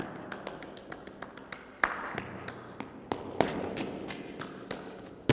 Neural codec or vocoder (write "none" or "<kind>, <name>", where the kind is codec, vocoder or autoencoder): none